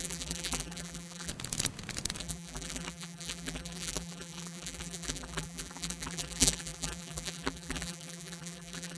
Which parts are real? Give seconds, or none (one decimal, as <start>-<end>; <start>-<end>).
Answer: 1.3-2.2